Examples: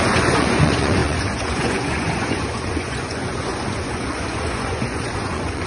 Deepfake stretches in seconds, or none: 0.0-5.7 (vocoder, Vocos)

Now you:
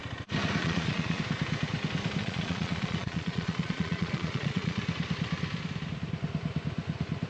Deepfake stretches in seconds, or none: 0.6-1.2 (vocoder, Vocos); 2.2-4.8